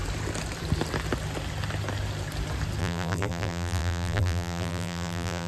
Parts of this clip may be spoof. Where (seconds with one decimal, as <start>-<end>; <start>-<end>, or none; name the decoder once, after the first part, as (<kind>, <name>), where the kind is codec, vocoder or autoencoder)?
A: 2.8-5.5 (vocoder, BigVGAN v2)